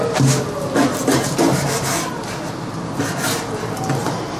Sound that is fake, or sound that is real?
real